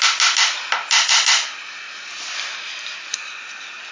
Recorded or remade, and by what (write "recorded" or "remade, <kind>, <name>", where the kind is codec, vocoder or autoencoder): recorded